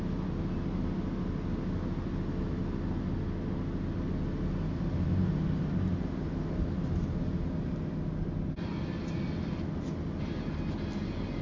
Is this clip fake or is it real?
real